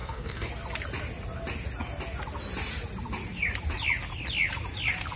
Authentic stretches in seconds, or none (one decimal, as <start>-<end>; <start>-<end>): 0.5-5.2